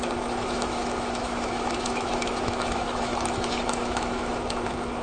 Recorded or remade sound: remade